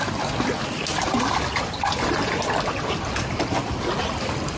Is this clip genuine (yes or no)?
yes